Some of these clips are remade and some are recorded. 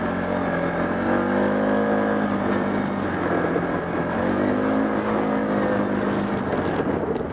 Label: recorded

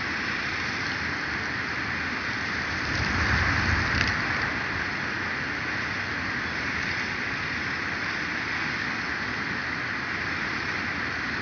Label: recorded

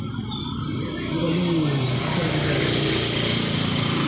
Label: recorded